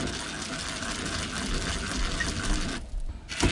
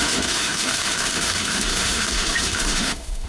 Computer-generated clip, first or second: second